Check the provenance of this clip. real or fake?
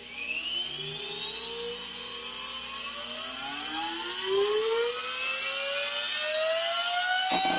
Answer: real